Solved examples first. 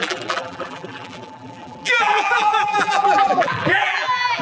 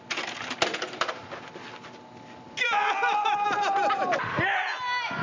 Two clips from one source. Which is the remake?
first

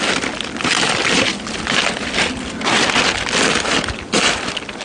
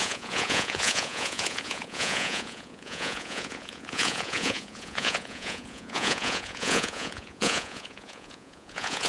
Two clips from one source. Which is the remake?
second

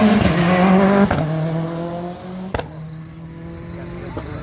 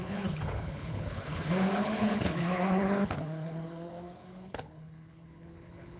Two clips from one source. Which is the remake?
second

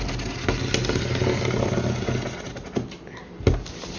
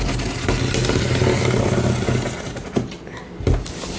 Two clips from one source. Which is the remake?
second